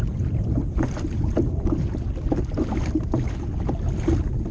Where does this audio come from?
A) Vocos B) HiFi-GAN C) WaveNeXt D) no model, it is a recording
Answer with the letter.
D